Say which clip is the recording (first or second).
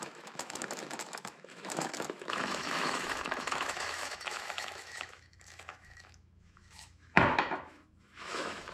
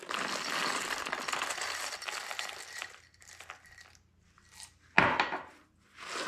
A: second